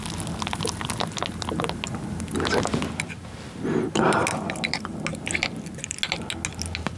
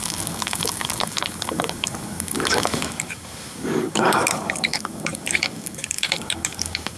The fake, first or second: second